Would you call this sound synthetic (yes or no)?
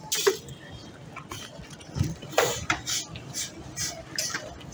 no